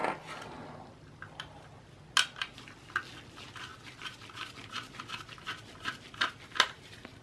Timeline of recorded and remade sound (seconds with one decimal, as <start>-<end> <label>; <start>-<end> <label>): 0.0-7.2 recorded